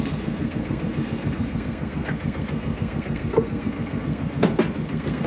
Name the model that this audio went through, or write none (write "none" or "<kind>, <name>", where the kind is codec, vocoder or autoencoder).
codec, SNAC